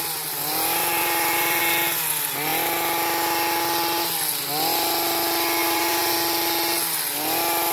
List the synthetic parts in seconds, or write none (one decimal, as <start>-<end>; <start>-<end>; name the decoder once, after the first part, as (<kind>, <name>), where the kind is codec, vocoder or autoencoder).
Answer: 0.8-1.6 (vocoder, BigVGAN v2); 5.6-6.1